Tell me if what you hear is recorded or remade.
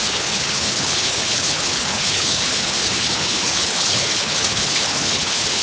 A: remade